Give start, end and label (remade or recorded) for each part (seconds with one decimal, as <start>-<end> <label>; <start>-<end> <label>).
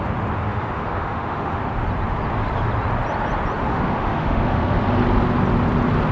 0.0-0.5 recorded; 0.5-1.6 remade; 1.6-3.7 recorded; 3.7-4.8 remade; 4.8-6.1 recorded